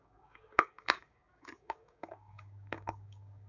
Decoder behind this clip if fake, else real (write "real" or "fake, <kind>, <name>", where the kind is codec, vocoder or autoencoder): fake, codec, DAC